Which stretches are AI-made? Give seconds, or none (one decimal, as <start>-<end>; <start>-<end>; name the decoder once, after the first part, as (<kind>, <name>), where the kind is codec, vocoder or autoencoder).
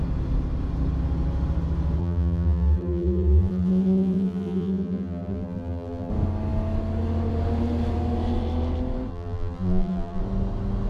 2.0-6.1 (vocoder, BigVGAN v2); 9.1-10.2